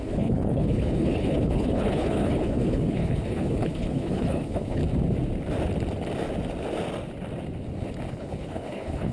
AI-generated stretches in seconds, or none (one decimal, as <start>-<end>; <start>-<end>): 0.0-4.8; 8.1-9.1